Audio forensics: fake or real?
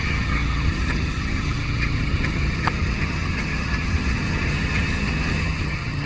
fake